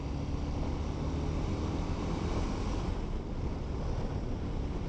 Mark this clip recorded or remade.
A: recorded